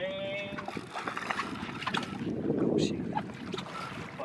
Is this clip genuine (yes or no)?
yes